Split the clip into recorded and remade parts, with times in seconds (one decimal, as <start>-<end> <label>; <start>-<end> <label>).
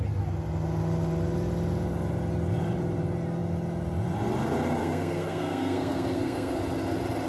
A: 0.0-4.8 recorded; 4.8-6.6 remade; 6.6-7.3 recorded